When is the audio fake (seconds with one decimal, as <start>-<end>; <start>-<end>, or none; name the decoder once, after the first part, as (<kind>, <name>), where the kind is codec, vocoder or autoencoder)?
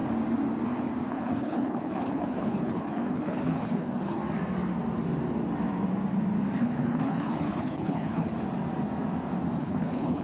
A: 1.1-4.2 (codec, HILCodec); 6.6-8.3; 9.6-10.2